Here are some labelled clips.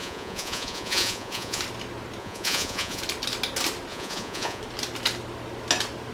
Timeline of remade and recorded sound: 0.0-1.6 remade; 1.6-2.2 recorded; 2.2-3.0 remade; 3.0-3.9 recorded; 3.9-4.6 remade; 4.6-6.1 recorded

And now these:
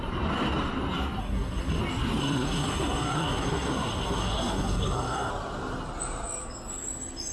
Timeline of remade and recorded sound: 0.0-1.2 recorded; 1.2-1.8 remade; 1.8-2.2 recorded; 2.2-5.3 remade; 5.3-7.3 recorded

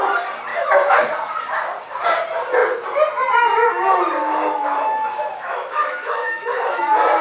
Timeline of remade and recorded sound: 0.0-0.5 recorded; 0.5-1.0 remade; 1.0-4.2 recorded; 4.2-6.8 remade; 6.8-7.2 recorded